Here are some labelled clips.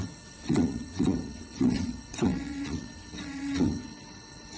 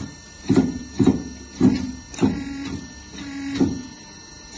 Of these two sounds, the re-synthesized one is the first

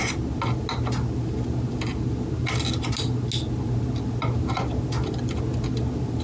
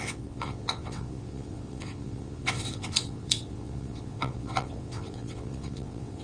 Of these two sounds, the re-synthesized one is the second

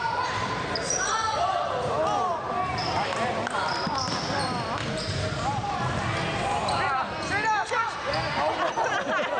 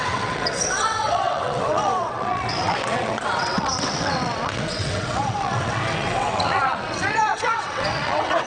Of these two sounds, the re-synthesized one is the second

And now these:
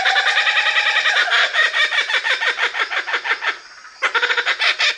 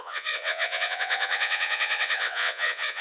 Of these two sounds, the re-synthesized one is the second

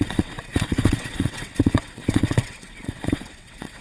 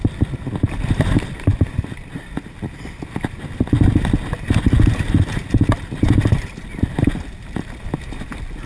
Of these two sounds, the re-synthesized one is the first